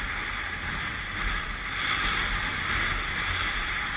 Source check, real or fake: real